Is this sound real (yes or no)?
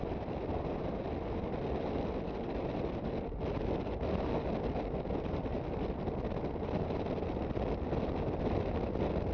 yes